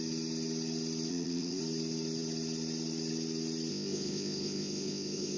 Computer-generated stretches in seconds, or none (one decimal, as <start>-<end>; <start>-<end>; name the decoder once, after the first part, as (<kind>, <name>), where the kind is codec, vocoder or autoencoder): 1.1-1.6 (codec, ZipCodec); 3.7-5.4